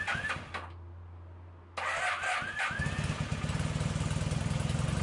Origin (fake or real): real